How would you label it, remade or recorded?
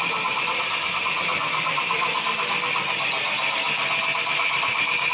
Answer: recorded